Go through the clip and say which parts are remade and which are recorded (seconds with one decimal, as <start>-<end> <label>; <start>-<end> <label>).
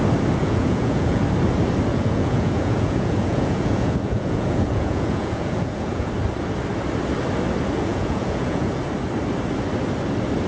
0.0-0.4 recorded; 0.4-1.2 remade; 1.2-1.9 recorded; 1.9-6.1 remade; 6.1-7.9 recorded; 7.9-8.8 remade; 8.8-10.5 recorded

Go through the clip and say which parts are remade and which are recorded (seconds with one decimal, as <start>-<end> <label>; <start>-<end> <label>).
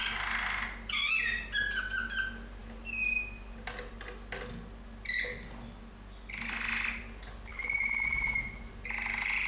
0.0-7.5 recorded; 7.5-8.7 remade; 8.7-9.5 recorded